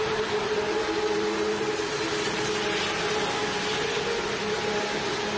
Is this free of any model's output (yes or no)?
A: yes